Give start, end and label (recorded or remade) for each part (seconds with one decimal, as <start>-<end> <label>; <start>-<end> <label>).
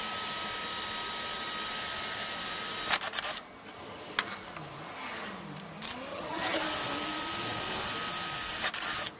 0.0-6.1 recorded; 6.1-6.6 remade; 6.6-9.2 recorded